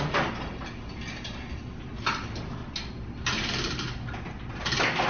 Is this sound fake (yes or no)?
no